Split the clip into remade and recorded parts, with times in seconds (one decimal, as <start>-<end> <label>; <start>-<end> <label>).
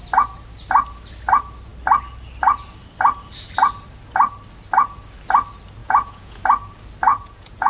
0.0-5.8 recorded; 5.8-6.4 remade; 6.4-7.1 recorded; 7.1-7.7 remade